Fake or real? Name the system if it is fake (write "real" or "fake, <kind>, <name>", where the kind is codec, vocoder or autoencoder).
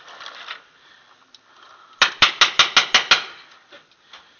real